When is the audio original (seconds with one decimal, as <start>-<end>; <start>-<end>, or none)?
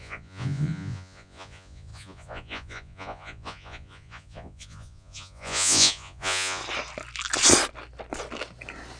6.6-9.0